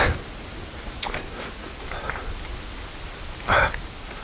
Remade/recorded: recorded